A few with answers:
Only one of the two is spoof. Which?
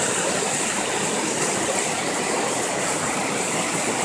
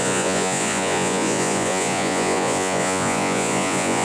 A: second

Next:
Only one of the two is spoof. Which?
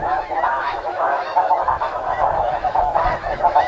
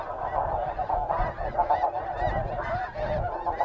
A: first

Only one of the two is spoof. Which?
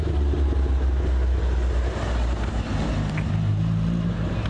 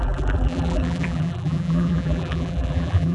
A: second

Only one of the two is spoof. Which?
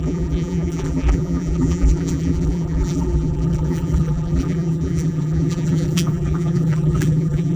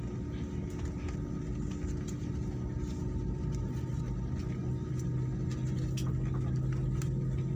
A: first